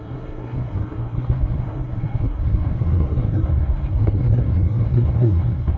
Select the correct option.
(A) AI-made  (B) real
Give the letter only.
A